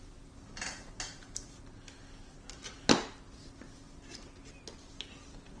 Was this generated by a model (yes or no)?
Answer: no